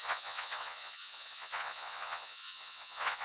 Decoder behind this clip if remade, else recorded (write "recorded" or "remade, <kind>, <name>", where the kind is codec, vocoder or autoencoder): remade, vocoder, Vocos